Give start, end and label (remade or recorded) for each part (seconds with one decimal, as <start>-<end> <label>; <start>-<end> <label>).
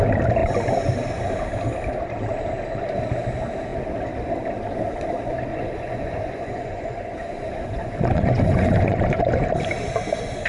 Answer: 0.0-5.5 recorded; 5.5-9.2 remade; 9.2-10.5 recorded